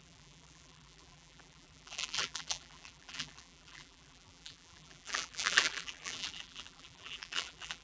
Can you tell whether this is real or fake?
fake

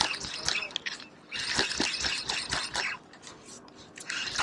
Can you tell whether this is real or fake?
real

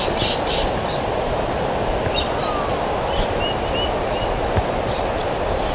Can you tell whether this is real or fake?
real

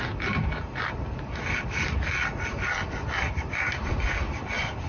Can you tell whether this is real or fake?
real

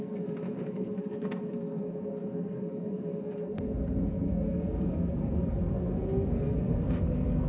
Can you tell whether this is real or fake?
fake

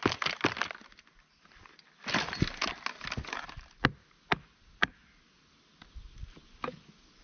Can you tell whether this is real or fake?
real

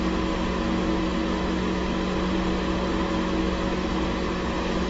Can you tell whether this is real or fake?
real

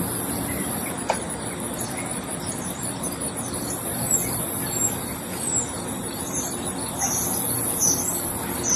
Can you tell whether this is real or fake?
fake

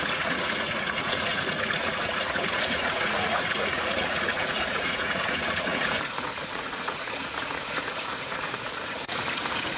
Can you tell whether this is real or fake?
fake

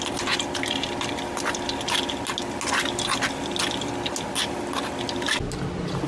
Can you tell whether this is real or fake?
real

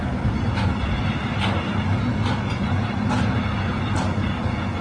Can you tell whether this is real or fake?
real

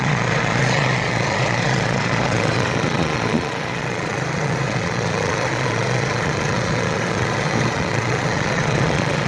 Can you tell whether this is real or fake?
fake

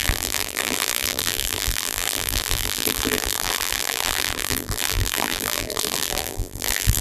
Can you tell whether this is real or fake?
fake